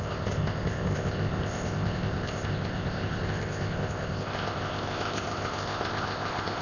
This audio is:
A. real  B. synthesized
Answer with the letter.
B